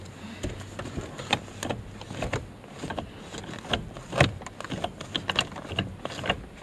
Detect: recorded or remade recorded